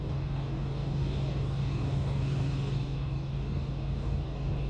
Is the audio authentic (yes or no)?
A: no